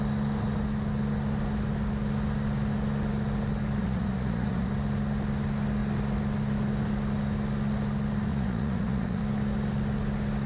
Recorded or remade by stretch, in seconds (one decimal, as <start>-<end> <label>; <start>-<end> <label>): 0.0-3.8 recorded; 3.8-4.7 remade; 4.7-8.3 recorded; 8.3-9.2 remade; 9.2-10.5 recorded